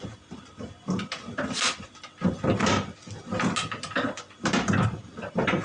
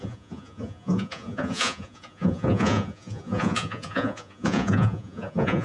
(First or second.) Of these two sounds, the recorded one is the first